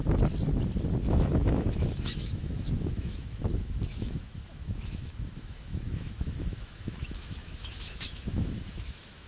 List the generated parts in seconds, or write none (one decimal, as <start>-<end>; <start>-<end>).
1.1-9.3